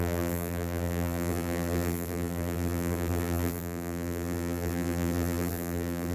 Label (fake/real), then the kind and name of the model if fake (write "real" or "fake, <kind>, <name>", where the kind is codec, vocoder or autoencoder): fake, vocoder, BigVGAN v2